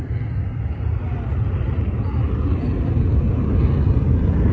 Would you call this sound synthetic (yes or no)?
no